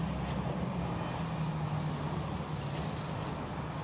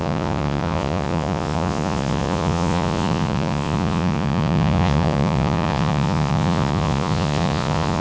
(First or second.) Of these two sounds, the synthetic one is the second